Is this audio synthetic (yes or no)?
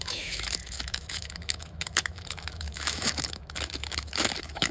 yes